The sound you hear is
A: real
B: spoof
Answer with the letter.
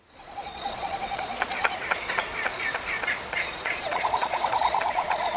B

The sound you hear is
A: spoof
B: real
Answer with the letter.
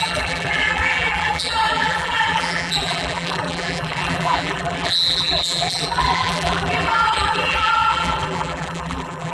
A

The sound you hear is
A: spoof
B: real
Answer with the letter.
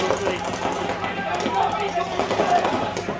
B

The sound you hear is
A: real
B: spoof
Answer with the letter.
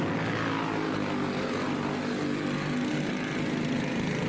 A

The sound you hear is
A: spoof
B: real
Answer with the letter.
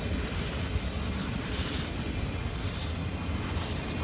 B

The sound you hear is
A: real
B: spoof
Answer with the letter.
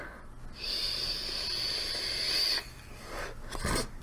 A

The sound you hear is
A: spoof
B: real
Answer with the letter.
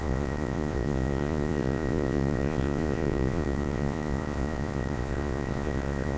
A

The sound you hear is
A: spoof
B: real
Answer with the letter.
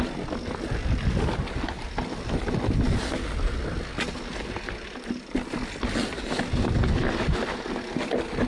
B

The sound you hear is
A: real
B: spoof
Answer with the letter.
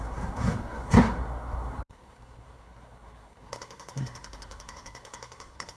B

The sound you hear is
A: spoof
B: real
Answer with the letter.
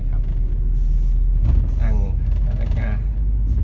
B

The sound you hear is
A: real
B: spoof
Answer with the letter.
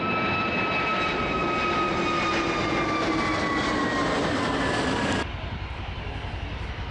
A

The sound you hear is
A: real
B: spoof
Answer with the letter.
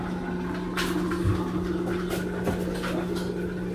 A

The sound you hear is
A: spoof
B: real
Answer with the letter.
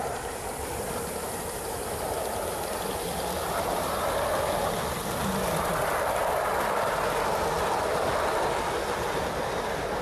B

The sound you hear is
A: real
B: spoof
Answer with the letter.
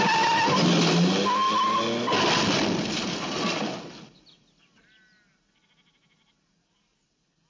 A